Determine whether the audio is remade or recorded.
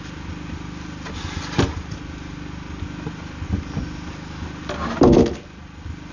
recorded